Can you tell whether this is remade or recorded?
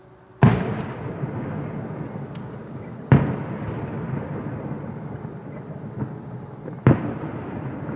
recorded